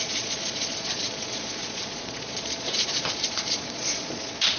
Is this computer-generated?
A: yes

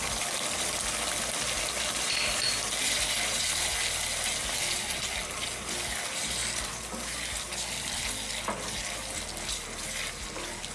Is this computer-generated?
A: no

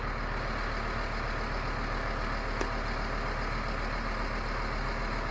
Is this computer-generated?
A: no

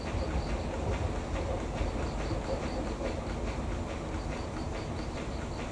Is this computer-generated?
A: no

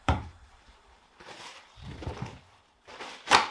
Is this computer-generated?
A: yes